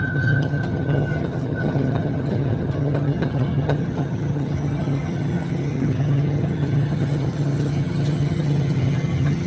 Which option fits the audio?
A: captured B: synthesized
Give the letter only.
B